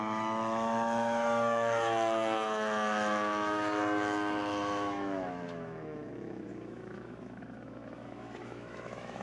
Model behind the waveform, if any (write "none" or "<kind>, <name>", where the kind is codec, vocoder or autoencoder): autoencoder, DAC-VAE